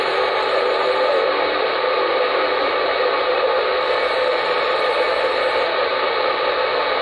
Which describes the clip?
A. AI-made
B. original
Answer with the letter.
B